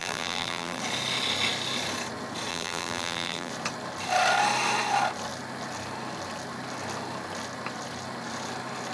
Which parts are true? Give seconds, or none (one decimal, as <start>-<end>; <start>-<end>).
0.8-2.5; 3.5-8.9